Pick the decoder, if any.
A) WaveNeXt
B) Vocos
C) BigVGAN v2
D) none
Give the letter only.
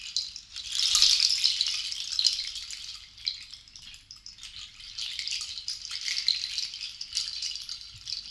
D